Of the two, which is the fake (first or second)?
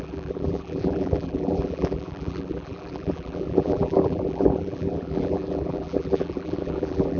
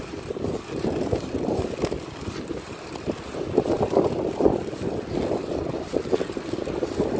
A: first